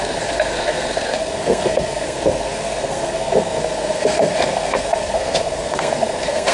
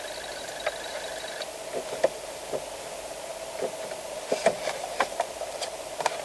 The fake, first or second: first